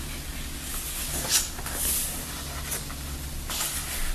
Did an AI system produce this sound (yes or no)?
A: no